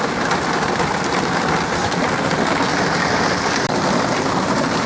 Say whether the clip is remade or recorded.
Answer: recorded